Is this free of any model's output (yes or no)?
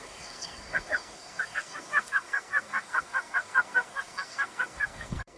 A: no